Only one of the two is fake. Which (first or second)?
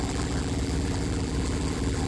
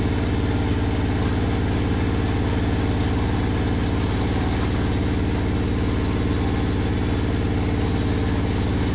first